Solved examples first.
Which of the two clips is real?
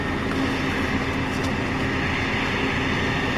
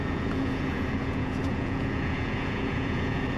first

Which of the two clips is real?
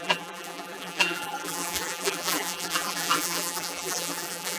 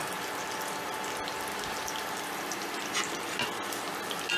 second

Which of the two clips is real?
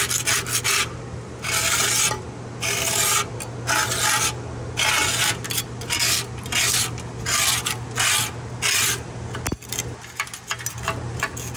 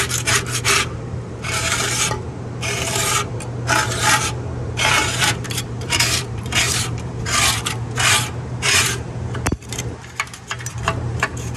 first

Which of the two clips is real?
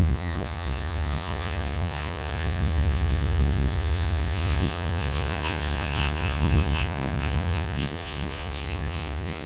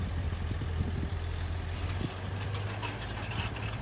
second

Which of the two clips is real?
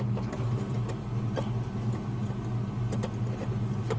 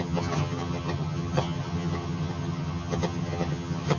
first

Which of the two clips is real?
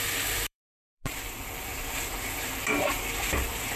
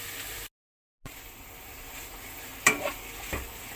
second